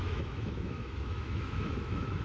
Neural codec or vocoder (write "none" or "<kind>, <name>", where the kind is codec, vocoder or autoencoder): autoencoder, DAC-VAE